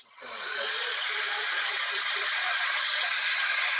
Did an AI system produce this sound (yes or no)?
yes